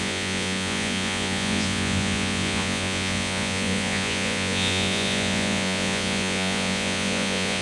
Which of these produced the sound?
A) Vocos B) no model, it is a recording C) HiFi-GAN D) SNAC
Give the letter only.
A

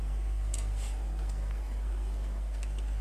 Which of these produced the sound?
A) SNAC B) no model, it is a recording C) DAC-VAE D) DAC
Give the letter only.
A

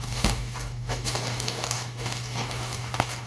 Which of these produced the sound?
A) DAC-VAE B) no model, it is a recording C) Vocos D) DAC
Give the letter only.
D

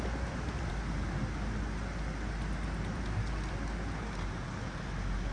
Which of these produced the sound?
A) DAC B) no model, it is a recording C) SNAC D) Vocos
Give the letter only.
B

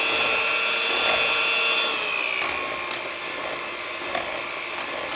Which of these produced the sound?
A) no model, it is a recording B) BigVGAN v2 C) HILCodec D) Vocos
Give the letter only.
A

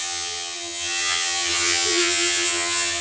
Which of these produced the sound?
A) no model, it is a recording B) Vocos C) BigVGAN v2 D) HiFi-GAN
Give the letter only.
D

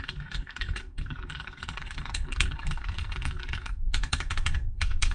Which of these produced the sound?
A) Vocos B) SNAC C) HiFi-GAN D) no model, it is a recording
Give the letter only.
B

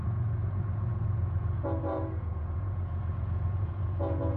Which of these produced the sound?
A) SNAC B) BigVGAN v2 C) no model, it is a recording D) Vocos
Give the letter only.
D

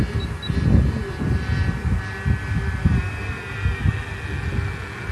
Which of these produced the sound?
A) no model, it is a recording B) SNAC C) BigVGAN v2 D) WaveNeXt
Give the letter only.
A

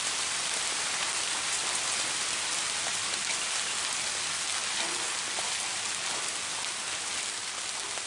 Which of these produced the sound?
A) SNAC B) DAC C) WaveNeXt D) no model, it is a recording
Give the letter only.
D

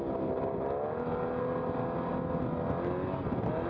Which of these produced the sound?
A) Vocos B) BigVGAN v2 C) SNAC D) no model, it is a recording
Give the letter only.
D